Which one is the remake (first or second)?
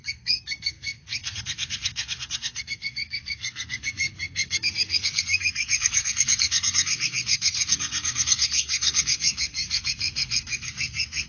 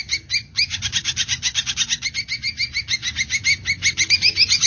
first